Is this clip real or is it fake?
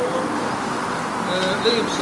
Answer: real